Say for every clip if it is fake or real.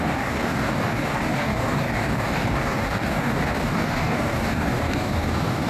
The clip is fake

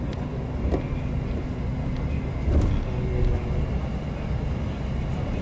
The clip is real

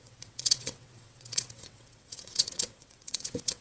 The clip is fake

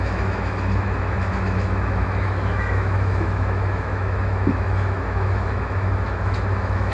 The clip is fake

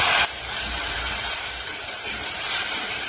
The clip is fake